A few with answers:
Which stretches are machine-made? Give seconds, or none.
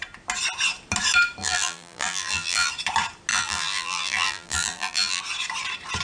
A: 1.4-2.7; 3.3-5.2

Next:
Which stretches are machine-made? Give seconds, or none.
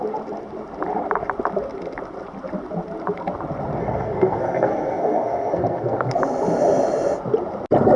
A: 3.8-6.1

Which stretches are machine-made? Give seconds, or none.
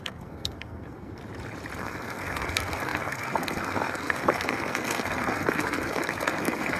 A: 0.0-1.2; 1.8-6.8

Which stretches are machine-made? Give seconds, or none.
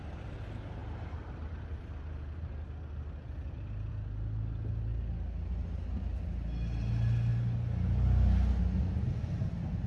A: none